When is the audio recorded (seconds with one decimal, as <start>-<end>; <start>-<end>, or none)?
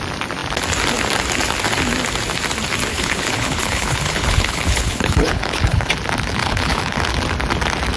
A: 0.0-2.9; 5.9-6.4; 7.0-8.0